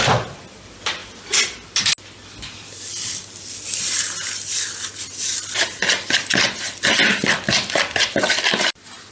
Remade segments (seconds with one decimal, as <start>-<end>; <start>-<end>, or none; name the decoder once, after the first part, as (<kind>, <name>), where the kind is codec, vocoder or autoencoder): none